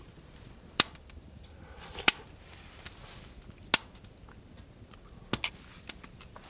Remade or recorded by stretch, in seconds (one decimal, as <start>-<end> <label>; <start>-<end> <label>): 0.0-2.1 remade; 2.1-6.5 recorded